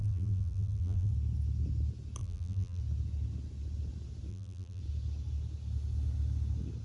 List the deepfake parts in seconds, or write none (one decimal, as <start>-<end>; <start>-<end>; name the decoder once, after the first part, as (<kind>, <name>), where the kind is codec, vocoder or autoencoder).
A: 0.0-1.1 (vocoder, BigVGAN v2); 2.2-2.8; 4.3-4.8